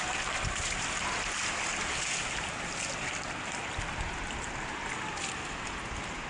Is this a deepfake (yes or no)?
no